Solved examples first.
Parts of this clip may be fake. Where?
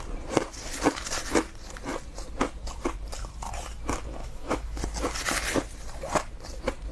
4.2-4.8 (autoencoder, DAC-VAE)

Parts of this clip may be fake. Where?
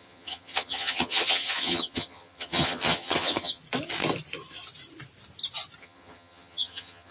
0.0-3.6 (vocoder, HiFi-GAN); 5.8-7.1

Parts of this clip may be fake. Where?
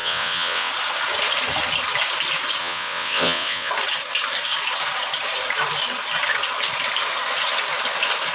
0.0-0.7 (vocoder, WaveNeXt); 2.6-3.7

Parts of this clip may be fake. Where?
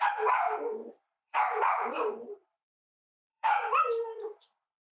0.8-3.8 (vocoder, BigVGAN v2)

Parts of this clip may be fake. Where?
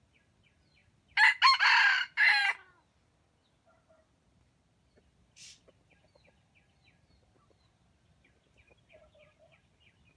none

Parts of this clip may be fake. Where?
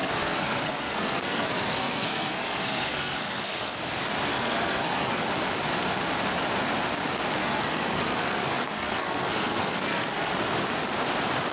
0.0-3.8 (codec, SNAC); 4.3-5.2; 7.4-10.3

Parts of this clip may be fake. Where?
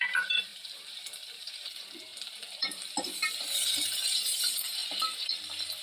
0.0-4.8 (vocoder, BigVGAN v2)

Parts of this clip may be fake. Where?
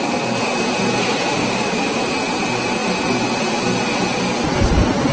1.4-2.0 (codec, DAC)